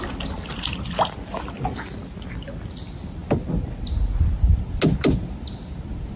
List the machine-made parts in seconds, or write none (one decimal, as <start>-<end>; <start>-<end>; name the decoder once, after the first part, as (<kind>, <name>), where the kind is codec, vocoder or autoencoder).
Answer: none